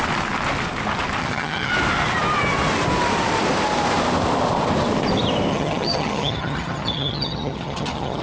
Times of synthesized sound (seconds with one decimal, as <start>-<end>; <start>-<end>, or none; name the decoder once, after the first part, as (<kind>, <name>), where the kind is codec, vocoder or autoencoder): 1.2-1.7 (vocoder, HiFi-GAN); 5.5-8.2